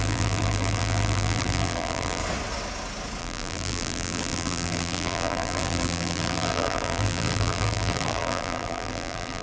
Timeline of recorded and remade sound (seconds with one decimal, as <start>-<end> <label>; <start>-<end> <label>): 0.0-2.2 remade; 2.2-3.2 recorded; 3.2-9.4 remade